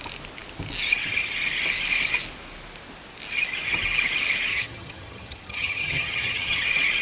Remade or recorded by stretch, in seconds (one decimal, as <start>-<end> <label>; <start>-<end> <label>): 0.0-4.5 recorded; 4.5-6.6 remade; 6.6-7.0 recorded